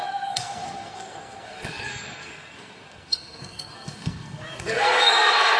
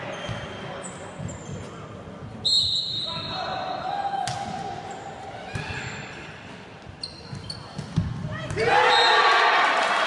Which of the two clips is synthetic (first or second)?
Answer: first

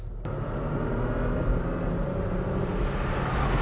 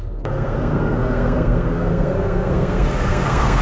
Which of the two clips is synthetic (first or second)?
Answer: second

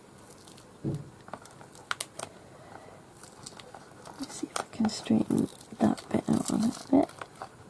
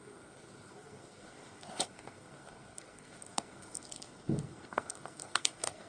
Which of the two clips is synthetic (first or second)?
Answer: second